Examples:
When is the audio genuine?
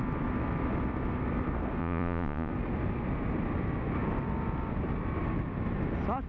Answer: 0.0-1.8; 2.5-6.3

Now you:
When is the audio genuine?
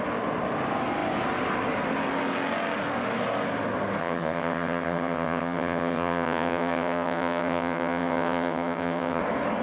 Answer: 0.0-4.0; 9.2-9.6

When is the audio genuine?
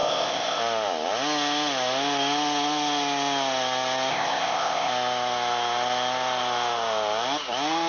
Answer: 0.6-4.1; 4.9-7.9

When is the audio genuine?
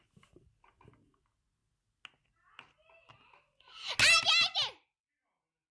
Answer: 0.0-5.7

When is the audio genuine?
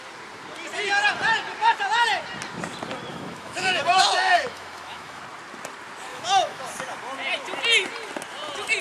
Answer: 0.0-3.1; 5.2-6.1; 6.6-8.8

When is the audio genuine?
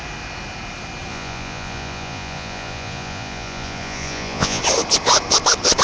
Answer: 0.0-1.1; 4.6-5.8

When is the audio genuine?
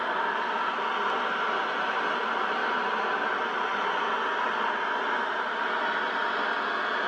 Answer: 0.0-7.1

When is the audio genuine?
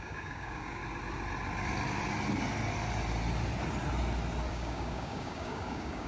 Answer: 0.8-4.5